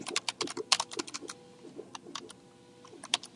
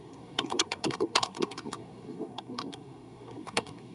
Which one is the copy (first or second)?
second